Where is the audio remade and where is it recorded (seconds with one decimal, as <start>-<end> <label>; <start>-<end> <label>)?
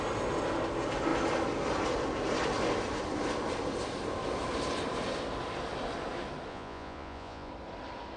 0.0-6.5 recorded; 6.5-7.5 remade; 7.5-8.2 recorded